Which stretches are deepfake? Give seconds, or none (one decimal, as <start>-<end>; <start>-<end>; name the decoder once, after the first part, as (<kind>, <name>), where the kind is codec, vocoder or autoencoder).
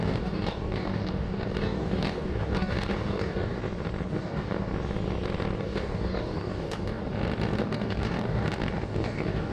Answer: 0.0-3.6 (codec, DAC); 4.1-4.7; 5.6-7.0; 7.6-9.5